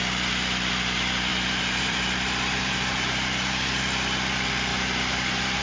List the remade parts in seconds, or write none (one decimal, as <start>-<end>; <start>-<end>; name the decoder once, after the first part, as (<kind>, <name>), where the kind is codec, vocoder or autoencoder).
1.3-3.8 (vocoder, BigVGAN v2); 4.7-5.6